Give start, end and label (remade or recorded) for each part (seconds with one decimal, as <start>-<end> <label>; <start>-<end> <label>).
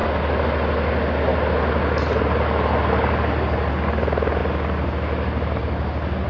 0.0-6.3 recorded